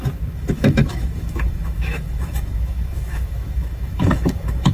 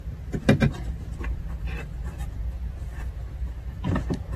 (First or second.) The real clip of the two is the second